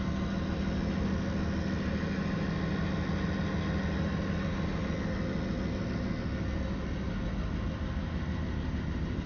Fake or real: real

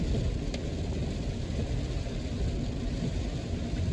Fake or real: real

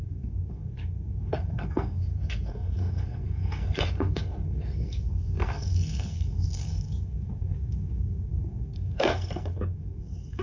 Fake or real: fake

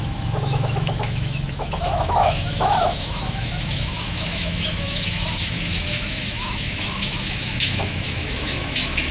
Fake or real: fake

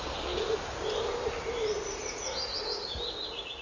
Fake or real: real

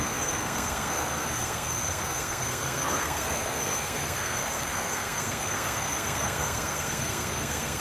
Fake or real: fake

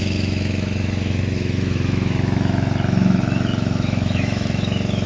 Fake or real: fake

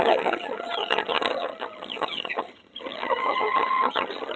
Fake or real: fake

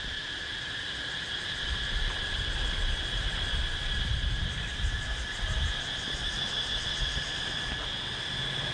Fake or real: fake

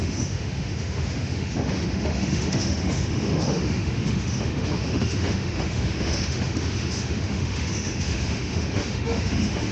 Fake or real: fake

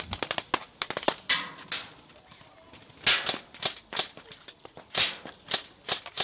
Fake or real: real